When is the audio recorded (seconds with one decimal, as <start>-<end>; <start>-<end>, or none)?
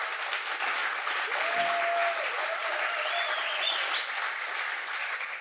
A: 0.0-0.8; 1.6-2.0